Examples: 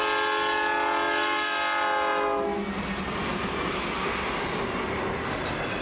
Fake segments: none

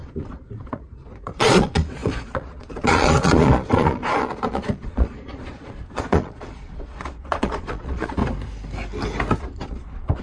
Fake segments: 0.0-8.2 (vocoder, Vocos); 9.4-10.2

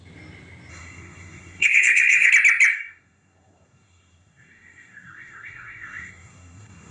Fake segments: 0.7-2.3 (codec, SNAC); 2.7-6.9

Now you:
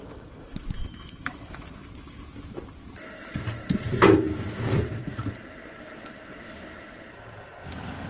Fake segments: 0.0-1.7 (autoencoder, DAC-VAE)

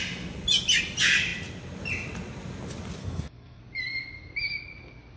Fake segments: 3.0-3.6 (codec, SNAC)